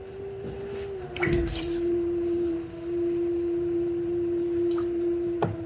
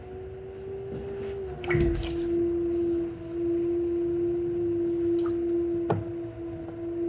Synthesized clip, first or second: first